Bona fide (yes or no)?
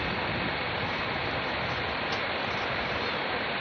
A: yes